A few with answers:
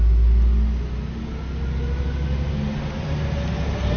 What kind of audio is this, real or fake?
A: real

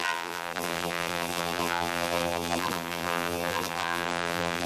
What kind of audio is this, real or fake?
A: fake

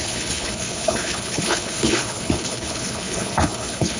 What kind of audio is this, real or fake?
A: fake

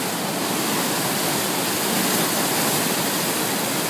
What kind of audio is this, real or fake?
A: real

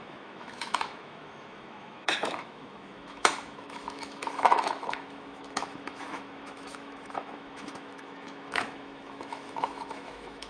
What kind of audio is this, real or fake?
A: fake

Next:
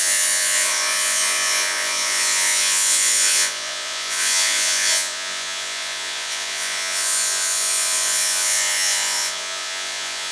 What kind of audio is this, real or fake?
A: fake